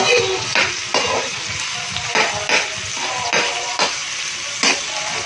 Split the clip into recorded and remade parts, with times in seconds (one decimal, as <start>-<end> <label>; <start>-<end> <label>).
0.0-5.3 recorded